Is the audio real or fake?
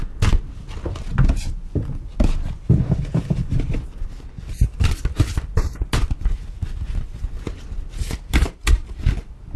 real